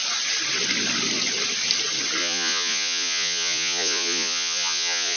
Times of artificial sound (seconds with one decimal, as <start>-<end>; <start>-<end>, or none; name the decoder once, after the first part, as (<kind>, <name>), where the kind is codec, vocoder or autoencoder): 2.2-5.2 (vocoder, Vocos)